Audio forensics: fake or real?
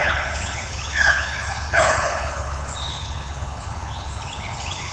fake